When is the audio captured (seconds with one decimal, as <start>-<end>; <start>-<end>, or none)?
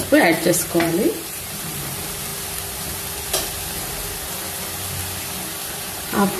2.3-5.8